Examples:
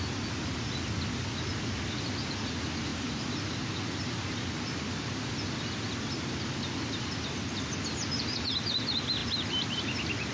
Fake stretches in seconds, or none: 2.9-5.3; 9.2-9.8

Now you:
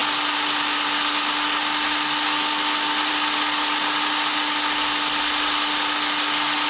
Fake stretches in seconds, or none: none

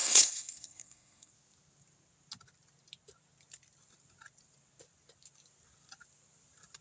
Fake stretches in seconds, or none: 0.0-1.3

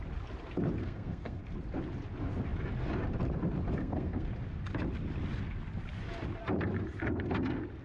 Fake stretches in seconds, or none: 0.8-1.4; 3.8-4.3

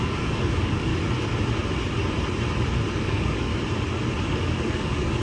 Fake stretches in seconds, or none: 0.0-0.9; 3.0-3.5; 4.2-5.2